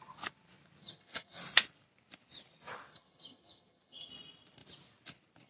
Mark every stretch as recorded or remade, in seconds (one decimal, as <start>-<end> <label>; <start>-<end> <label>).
0.0-0.8 recorded; 0.8-1.4 remade; 1.4-2.9 recorded; 2.9-4.1 remade; 4.1-5.5 recorded